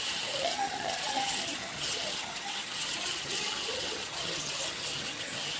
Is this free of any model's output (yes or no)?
no